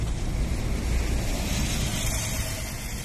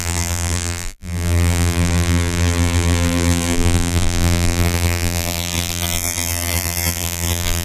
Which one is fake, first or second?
second